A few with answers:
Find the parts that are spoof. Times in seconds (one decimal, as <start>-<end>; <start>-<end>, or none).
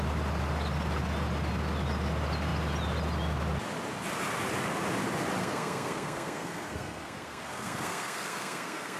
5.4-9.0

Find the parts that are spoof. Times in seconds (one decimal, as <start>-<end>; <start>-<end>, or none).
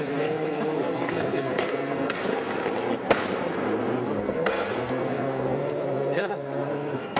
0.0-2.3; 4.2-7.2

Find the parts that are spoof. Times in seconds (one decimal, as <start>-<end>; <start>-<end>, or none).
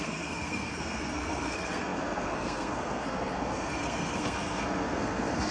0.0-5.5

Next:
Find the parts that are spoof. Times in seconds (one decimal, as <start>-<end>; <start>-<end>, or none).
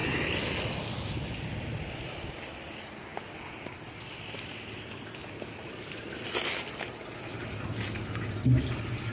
none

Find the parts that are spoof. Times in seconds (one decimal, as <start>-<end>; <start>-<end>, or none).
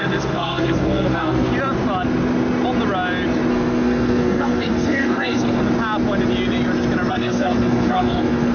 0.0-1.5; 3.5-5.6; 7.1-8.5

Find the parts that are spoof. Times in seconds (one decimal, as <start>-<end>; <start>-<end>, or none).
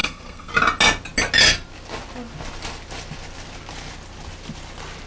0.0-0.5